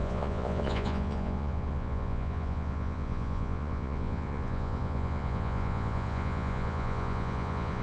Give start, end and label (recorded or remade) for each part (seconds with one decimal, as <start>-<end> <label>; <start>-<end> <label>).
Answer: 0.0-7.8 remade